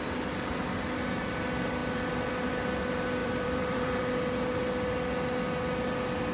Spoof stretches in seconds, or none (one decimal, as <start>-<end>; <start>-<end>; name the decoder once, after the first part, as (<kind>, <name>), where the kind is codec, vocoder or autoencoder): 3.2-4.0 (vocoder, BigVGAN v2)

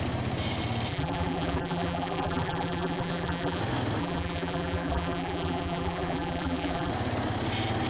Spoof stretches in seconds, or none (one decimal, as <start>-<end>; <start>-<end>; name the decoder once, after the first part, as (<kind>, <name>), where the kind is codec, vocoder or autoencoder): 0.9-3.6 (vocoder, BigVGAN v2); 4.0-6.9